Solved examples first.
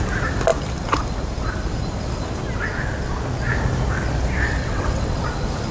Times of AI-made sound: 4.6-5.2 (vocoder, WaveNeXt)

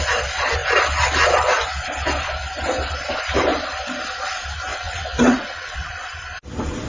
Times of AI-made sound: 4.7-5.9 (vocoder, WaveNeXt)

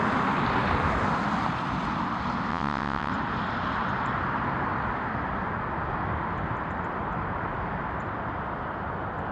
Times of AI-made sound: 2.5-3.1 (vocoder, WaveNeXt)

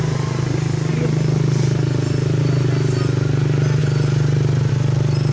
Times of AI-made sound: none

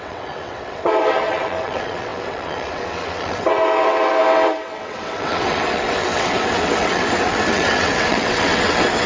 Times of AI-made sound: 0.0-9.1 (vocoder, WaveNeXt)